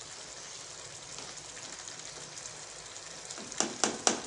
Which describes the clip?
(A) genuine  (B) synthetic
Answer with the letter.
A